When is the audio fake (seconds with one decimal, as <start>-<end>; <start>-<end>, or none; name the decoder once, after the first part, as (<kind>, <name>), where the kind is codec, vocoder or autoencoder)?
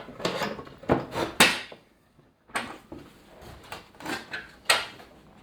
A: 1.5-2.5 (codec, DAC)